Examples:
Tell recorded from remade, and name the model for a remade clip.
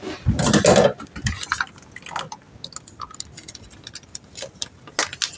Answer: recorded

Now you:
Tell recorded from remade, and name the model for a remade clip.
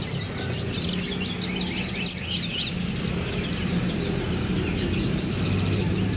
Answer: recorded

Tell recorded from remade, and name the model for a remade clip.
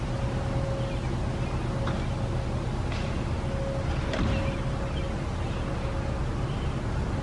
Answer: recorded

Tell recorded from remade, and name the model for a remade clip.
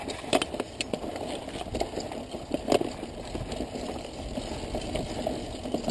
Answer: recorded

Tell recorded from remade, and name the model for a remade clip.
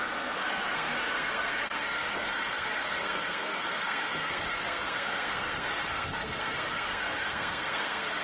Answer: remade, codec, SNAC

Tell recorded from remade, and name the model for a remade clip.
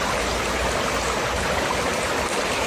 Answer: recorded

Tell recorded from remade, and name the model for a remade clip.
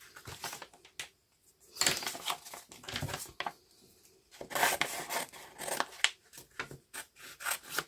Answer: recorded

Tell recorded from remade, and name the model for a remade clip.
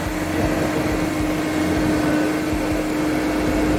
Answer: recorded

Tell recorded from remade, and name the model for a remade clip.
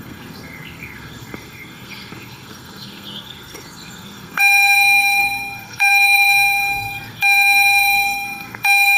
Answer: remade, codec, SNAC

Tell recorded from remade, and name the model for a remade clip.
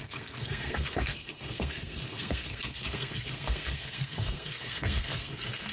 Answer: remade, codec, SNAC